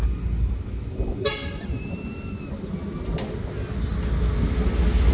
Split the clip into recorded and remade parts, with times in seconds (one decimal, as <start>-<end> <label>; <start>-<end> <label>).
0.0-5.1 recorded